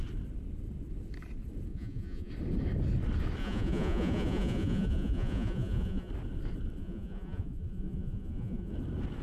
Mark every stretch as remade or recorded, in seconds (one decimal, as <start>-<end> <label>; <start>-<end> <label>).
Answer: 0.0-1.7 recorded; 1.7-2.3 remade; 2.3-3.4 recorded; 3.4-6.1 remade; 6.1-6.8 recorded; 6.8-8.7 remade; 8.7-9.2 recorded